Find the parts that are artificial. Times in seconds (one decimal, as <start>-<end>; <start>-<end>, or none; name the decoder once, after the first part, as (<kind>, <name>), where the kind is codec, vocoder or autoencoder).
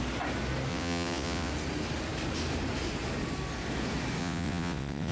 0.7-1.5 (vocoder, WaveNeXt); 4.2-5.1